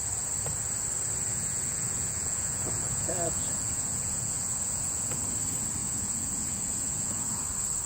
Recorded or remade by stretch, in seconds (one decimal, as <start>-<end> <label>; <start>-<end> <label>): 0.0-1.3 recorded; 1.3-5.2 remade; 5.2-5.8 recorded; 5.8-7.4 remade; 7.4-7.9 recorded